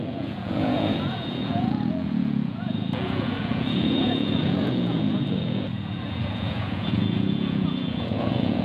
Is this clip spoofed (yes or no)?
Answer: yes